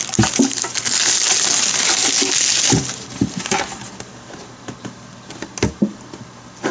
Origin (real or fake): real